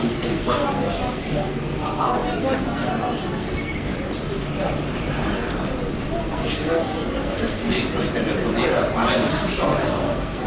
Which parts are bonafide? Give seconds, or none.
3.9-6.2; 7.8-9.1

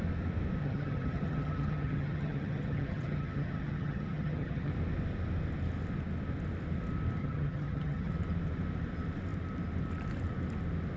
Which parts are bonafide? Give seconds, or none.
0.0-0.6; 4.7-7.2; 8.1-11.0

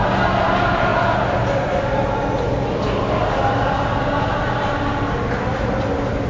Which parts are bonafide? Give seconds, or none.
0.0-6.3

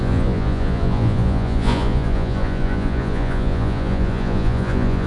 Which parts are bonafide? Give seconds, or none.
none

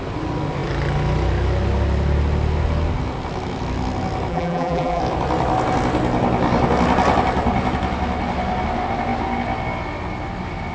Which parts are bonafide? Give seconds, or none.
0.0-4.3; 5.0-10.7

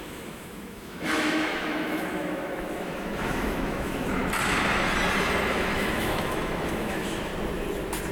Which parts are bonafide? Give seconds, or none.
4.2-5.5; 7.3-8.1

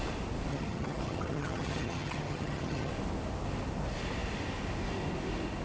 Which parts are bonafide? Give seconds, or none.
0.0-0.5; 2.9-5.6